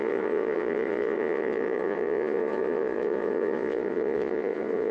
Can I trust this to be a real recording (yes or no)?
no